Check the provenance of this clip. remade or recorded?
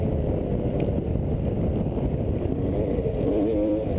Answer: remade